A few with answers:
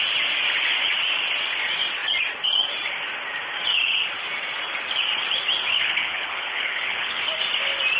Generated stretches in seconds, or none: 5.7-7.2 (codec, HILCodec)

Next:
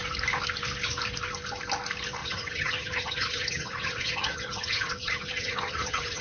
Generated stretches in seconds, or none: 2.2-6.2 (vocoder, HiFi-GAN)

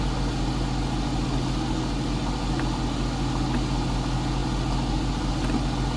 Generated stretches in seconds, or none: none